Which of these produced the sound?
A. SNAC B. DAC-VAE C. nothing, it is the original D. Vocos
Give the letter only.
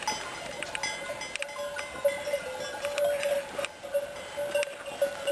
C